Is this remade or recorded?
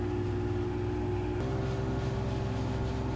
recorded